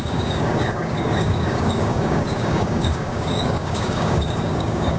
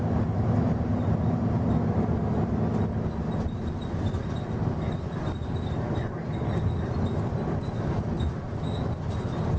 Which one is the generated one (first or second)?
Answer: first